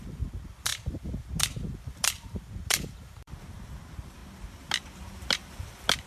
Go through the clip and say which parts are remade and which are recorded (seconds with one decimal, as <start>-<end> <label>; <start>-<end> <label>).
0.0-4.2 remade; 4.2-6.1 recorded